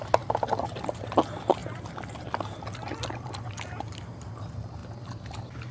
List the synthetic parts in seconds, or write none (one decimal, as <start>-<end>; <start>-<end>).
none